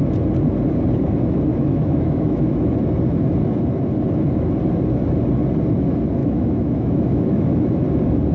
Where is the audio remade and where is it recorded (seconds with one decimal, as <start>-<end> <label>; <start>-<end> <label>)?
0.0-1.5 recorded; 1.5-2.5 remade; 2.5-6.2 recorded; 6.2-7.8 remade; 7.8-8.3 recorded

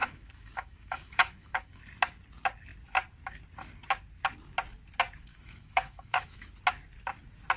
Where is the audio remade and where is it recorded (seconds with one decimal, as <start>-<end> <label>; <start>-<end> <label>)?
0.0-1.8 remade; 1.8-5.3 recorded; 5.3-6.5 remade; 6.5-7.6 recorded

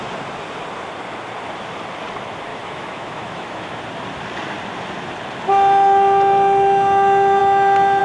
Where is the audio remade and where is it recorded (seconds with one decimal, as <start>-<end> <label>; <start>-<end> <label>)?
0.0-2.5 recorded; 2.5-3.8 remade; 3.8-8.0 recorded

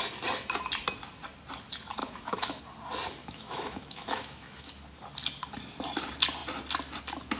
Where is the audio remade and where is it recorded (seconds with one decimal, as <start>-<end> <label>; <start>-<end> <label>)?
0.0-2.0 recorded; 2.0-2.6 remade; 2.6-3.2 recorded; 3.2-4.7 remade; 4.7-7.4 recorded

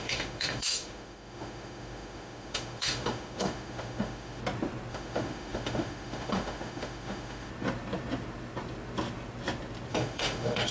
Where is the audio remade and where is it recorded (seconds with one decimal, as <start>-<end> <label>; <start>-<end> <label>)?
0.0-4.4 remade; 4.4-4.9 recorded; 4.9-7.5 remade; 7.5-9.9 recorded; 9.9-10.7 remade

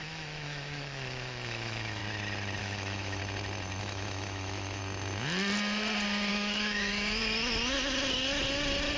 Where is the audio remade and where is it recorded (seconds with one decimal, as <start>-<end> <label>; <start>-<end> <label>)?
0.0-2.0 remade; 2.0-2.6 recorded; 2.6-3.2 remade; 3.2-3.8 recorded; 3.8-4.8 remade; 4.8-6.3 recorded; 6.3-7.2 remade; 7.2-9.0 recorded

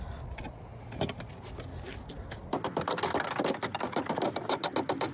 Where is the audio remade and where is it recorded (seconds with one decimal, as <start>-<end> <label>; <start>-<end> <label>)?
0.0-5.1 recorded

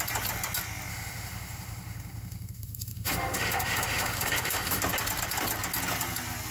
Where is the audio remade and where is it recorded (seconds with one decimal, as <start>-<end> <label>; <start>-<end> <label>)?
0.0-0.9 recorded; 0.9-4.8 remade; 4.8-6.5 recorded